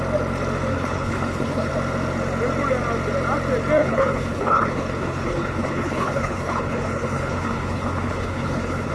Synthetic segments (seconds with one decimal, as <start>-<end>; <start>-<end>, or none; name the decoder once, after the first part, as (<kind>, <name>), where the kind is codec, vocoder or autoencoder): 0.7-1.7 (codec, HILCodec); 3.8-8.9